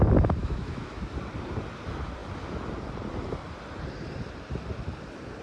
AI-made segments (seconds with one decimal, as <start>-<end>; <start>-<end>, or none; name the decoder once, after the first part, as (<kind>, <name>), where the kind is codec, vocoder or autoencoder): 0.4-1.1 (autoencoder, DAC-VAE)